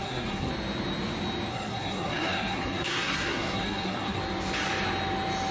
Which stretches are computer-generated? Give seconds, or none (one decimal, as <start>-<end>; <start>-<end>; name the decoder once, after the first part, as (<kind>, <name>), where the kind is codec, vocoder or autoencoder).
0.0-0.5 (codec, SNAC); 1.5-4.2